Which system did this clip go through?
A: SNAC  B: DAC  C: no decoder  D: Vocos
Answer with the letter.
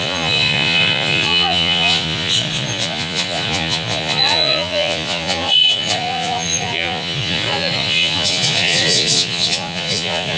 D